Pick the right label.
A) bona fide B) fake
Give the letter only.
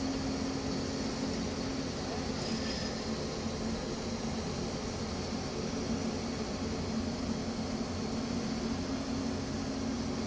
A